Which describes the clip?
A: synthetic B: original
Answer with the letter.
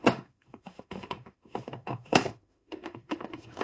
A